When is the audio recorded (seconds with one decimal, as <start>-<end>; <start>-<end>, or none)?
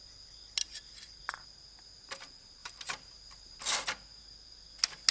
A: 0.0-2.6; 3.6-5.1